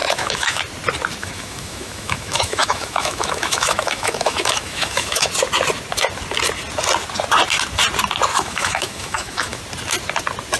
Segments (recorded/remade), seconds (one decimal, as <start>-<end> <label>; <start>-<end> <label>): 0.0-0.6 remade; 0.6-1.2 recorded; 1.2-5.3 remade; 5.3-8.3 recorded; 8.3-9.6 remade; 9.6-10.6 recorded